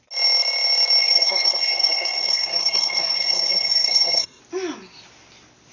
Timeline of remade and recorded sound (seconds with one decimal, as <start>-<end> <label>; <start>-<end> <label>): 0.0-1.0 recorded; 1.0-4.4 remade; 4.4-5.7 recorded